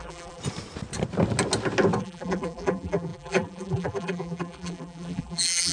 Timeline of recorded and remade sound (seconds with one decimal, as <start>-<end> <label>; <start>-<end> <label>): 0.0-0.4 remade; 0.4-2.0 recorded; 2.0-5.7 remade